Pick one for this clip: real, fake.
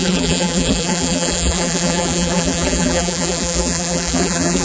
fake